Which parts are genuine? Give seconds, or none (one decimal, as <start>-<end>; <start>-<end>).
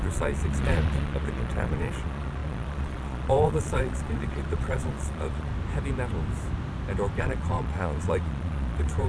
5.5-7.2